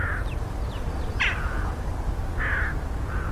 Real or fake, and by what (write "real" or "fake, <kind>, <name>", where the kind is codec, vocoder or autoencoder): real